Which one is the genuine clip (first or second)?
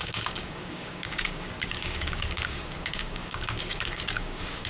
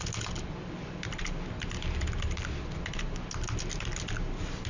second